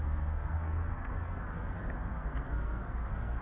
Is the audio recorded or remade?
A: remade